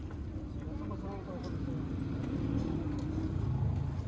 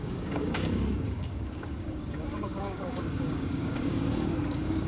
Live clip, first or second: first